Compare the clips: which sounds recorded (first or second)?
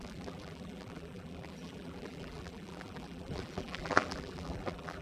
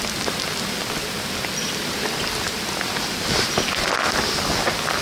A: second